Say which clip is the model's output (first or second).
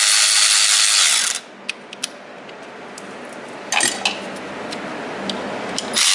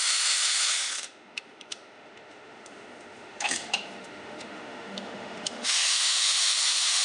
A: second